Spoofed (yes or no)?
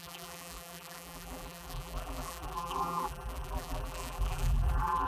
yes